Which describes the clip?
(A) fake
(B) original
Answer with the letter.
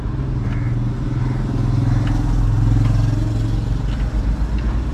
B